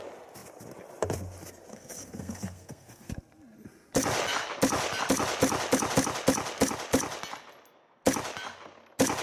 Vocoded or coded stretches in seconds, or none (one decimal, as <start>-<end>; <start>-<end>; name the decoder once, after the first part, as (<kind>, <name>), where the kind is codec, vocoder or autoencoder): 1.7-3.1 (codec, SNAC)